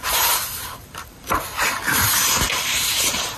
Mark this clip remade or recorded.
remade